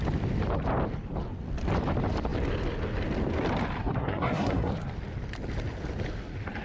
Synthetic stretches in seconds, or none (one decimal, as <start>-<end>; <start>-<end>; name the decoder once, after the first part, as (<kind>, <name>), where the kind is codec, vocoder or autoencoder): 3.8-4.7 (codec, SNAC)